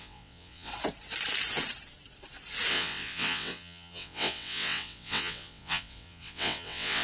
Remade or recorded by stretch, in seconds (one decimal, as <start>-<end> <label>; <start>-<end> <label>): 0.0-0.7 remade; 0.7-2.7 recorded; 2.7-7.0 remade